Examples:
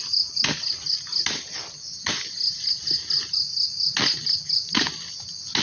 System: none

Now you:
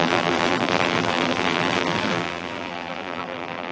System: vocoder, BigVGAN v2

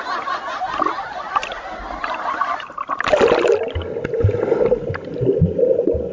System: none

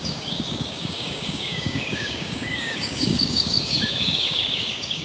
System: codec, DAC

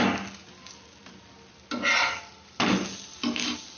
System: none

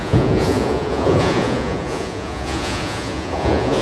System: vocoder, Vocos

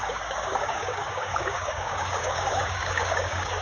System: codec, DAC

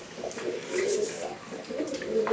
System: codec, DAC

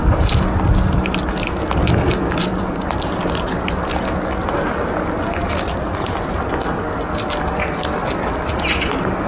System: none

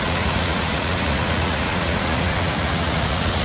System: vocoder, Vocos